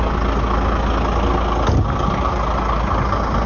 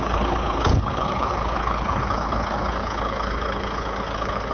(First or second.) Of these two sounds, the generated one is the second